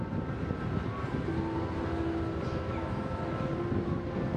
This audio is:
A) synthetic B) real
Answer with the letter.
B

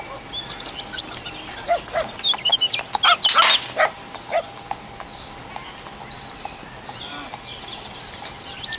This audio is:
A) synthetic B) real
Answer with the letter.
B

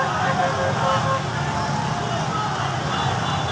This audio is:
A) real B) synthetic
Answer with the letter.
A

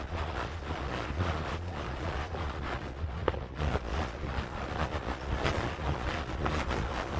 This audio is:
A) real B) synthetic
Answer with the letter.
B